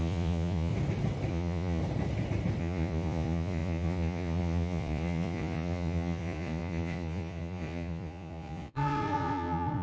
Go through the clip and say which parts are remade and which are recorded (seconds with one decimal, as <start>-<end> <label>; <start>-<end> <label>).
0.0-0.7 remade; 0.7-1.3 recorded; 1.3-1.8 remade; 1.8-2.6 recorded; 2.6-9.8 remade